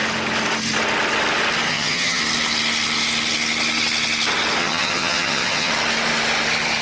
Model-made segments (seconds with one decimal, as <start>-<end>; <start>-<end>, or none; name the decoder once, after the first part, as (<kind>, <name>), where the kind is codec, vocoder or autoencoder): 1.7-2.2 (vocoder, HiFi-GAN); 4.6-5.7